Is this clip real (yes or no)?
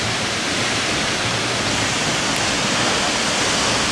no